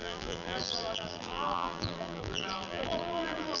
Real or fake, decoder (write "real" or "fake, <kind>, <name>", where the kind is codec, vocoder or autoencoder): fake, vocoder, BigVGAN v2